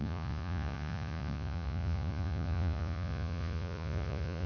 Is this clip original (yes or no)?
no